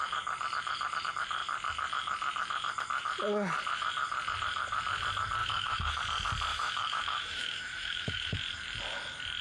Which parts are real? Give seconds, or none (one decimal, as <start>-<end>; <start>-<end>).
0.0-5.4; 6.0-6.5; 8.4-9.4